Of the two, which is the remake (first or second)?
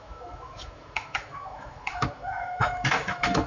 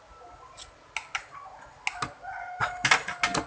first